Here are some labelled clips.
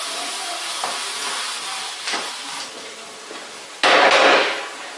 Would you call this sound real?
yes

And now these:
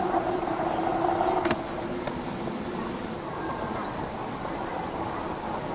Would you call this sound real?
no